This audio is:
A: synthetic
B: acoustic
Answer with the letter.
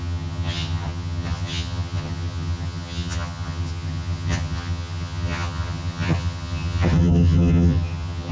A